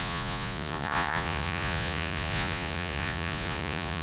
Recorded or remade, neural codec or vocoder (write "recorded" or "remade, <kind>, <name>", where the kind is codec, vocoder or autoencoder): remade, vocoder, Vocos